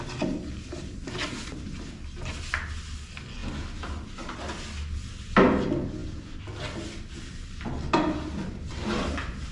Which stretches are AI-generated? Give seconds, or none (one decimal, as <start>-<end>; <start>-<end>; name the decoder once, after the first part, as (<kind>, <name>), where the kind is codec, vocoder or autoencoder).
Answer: none